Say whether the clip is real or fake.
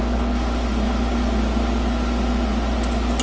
real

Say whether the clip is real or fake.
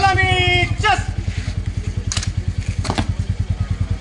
real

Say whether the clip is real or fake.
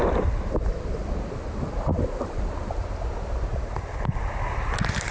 real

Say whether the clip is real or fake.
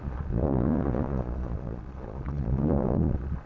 fake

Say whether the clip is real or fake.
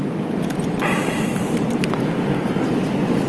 real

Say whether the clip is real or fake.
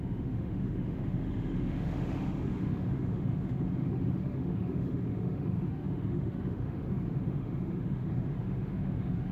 fake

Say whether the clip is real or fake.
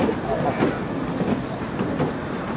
real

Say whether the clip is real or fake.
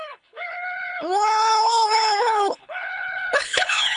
fake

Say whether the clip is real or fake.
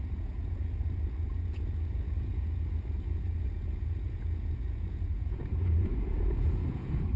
fake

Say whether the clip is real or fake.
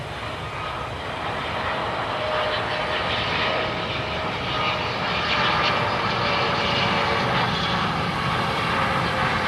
real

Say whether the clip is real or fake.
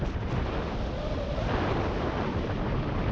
real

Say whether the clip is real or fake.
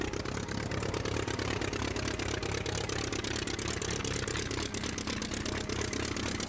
real